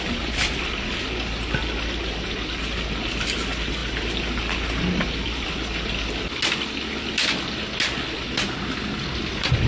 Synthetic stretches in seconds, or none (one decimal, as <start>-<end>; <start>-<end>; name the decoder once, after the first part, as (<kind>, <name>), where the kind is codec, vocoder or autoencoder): none